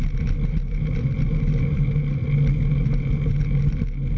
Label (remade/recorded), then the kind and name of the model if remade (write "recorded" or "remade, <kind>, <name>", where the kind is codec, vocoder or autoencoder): recorded